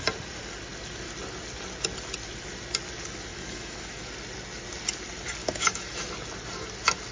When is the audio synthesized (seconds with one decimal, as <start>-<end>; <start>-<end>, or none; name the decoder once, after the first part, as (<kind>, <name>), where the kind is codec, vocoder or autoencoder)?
3.3-4.1 (autoencoder, DAC-VAE); 5.4-6.1